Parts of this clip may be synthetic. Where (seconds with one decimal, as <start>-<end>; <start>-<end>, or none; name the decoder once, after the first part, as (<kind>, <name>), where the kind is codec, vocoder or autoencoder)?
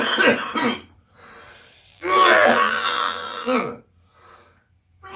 1.9-3.7 (vocoder, BigVGAN v2)